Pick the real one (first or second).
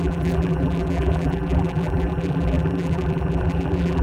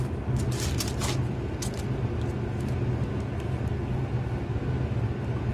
second